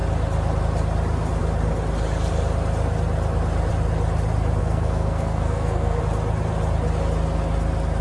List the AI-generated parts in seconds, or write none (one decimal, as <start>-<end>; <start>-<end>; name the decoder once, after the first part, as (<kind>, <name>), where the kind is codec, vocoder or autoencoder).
4.6-6.0 (codec, SNAC)